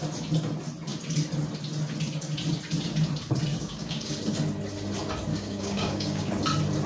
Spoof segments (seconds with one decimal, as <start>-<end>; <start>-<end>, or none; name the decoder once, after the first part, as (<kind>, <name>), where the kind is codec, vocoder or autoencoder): 3.5-4.1 (codec, DAC); 5.3-6.3